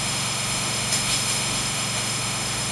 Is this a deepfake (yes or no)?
yes